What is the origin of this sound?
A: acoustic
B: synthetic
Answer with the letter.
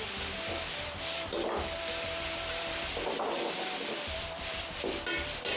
A